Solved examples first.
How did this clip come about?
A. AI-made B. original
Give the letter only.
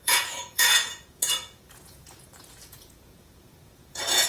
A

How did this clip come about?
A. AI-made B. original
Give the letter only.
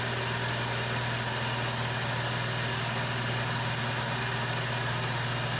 B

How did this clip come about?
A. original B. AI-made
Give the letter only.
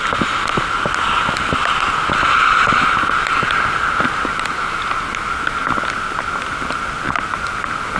A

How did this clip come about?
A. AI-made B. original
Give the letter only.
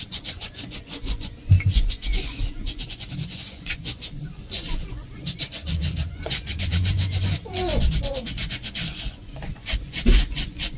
A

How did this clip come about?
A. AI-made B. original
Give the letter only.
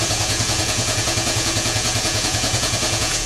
A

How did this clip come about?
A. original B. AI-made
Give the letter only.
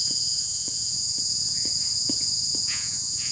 B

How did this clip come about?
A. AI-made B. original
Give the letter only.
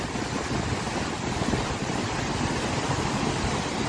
B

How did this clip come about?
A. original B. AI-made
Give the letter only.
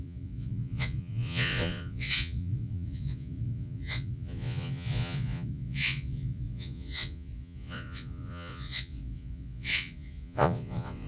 B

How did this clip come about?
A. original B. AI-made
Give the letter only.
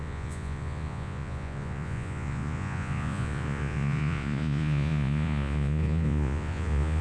B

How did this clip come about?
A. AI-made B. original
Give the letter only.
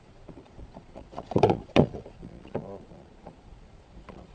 A